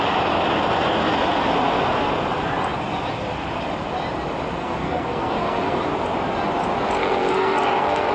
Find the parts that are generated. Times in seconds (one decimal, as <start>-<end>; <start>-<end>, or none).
4.6-5.8; 7.0-8.1